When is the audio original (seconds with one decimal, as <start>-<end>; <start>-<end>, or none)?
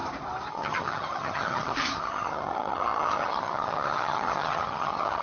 0.0-0.5